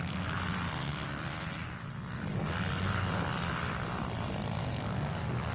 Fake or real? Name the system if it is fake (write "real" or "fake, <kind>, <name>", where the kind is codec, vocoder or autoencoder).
real